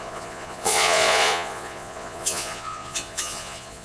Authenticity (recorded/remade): remade